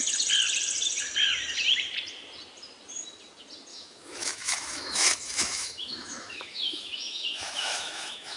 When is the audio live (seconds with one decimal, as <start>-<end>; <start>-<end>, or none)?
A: 0.0-3.7